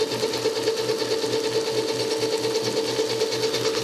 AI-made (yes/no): no